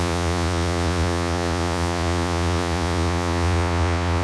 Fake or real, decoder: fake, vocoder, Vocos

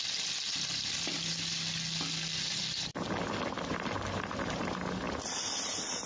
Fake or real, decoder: real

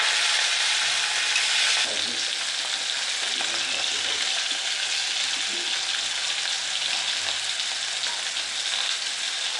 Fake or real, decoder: real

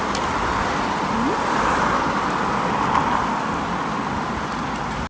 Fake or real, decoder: real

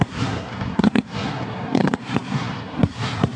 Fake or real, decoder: fake, codec, SNAC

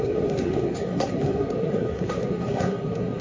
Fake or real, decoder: fake, codec, SNAC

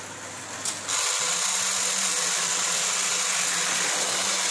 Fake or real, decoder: real